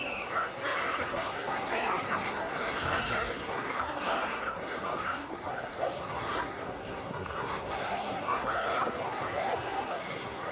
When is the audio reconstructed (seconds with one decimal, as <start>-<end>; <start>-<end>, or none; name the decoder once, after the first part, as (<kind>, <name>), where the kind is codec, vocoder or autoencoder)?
0.0-10.5 (codec, SNAC)

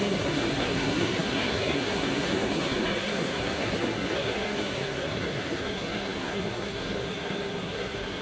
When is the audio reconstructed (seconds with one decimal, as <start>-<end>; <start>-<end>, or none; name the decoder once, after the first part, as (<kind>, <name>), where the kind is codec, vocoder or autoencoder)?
0.0-8.2 (codec, SNAC)

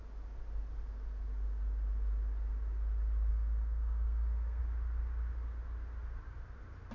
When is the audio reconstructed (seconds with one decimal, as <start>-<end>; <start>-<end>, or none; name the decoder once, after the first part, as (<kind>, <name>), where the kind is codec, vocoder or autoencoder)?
3.3-4.6 (codec, SNAC)

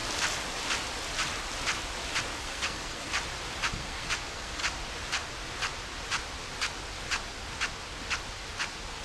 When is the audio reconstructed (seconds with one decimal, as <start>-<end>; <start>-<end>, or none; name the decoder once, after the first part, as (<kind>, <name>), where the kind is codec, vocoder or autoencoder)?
2.4-3.1 (codec, SNAC); 3.7-4.6

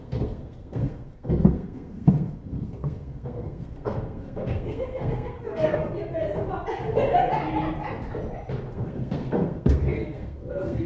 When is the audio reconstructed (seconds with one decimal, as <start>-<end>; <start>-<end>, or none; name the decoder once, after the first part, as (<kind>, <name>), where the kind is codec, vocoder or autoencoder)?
0.0-5.8 (codec, SNAC); 8.7-10.9